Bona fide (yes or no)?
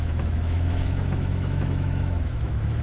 no